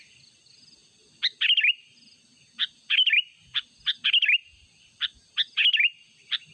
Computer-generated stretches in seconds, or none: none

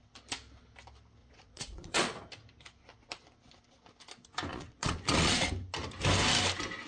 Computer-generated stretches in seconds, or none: 1.2-2.2 (vocoder, Vocos); 4.5-5.5

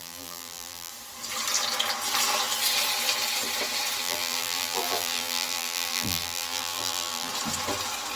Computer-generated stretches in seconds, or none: 0.0-0.9 (vocoder, BigVGAN v2); 4.0-7.3

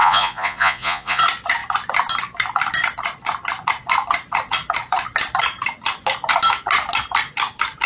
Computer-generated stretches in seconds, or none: 0.0-1.2 (vocoder, Vocos)

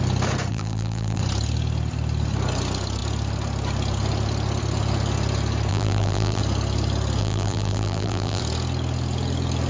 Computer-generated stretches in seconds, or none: 0.5-1.2 (vocoder, BigVGAN v2); 5.7-6.4; 7.2-8.4

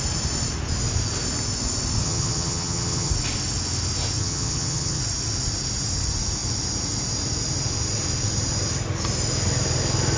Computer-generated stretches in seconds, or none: 2.0-3.1 (vocoder, HiFi-GAN); 4.2-5.0